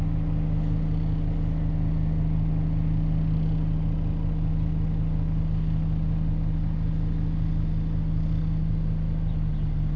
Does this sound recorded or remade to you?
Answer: recorded